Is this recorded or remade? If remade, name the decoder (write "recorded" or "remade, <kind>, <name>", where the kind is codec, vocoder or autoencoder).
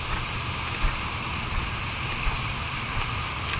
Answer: remade, vocoder, BigVGAN v2